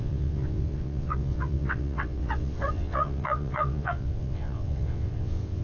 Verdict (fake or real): fake